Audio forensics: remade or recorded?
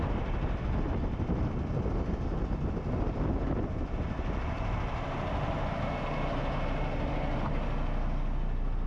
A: recorded